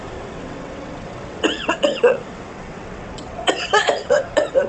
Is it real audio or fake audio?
fake